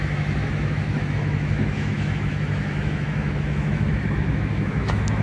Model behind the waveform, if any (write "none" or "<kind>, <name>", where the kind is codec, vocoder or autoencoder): autoencoder, DAC-VAE